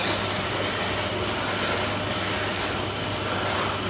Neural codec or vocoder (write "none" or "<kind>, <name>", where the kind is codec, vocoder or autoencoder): none